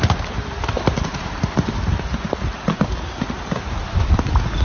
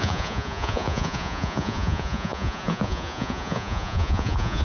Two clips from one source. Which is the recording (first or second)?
first